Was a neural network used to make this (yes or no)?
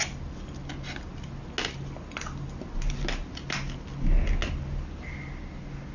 no